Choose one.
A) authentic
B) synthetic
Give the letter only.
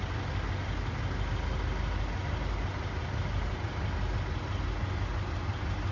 A